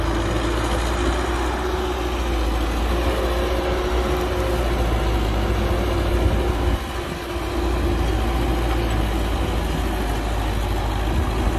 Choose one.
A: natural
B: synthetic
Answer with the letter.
A